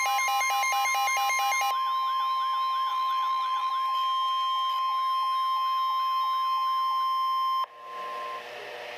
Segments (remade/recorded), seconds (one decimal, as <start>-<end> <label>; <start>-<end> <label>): 0.0-2.9 recorded; 2.9-3.7 remade; 3.7-9.0 recorded